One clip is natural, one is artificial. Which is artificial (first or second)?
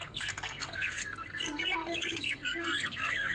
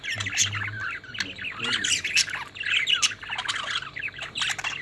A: first